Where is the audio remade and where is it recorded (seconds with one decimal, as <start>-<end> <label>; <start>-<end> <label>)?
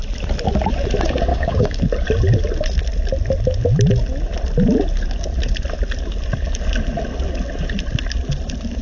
0.0-1.3 recorded; 1.3-1.8 remade; 1.8-8.8 recorded